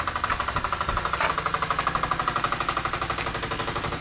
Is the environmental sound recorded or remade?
recorded